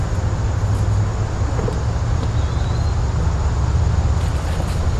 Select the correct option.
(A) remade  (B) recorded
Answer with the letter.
B